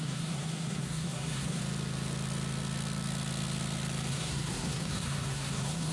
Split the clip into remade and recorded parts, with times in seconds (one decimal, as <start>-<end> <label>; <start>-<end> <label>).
0.0-1.6 remade; 1.6-4.1 recorded; 4.1-5.9 remade